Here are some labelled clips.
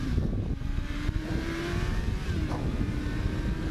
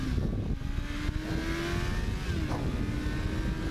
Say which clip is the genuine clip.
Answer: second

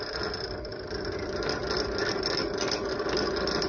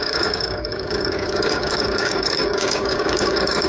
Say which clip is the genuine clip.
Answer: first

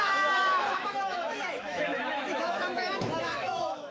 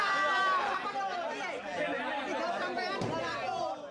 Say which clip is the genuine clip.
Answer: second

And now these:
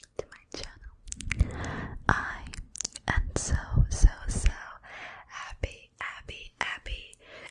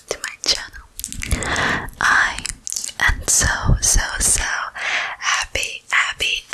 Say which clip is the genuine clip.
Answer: second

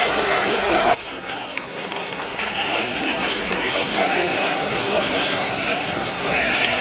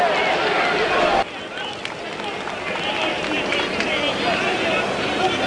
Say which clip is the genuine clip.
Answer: second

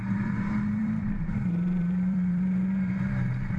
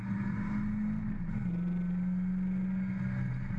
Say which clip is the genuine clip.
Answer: second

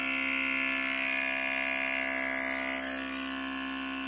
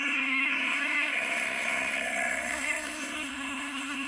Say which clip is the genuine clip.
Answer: first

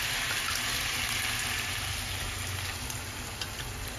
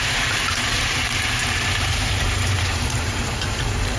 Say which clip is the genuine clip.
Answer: first